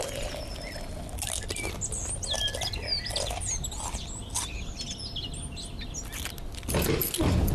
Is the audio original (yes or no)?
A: yes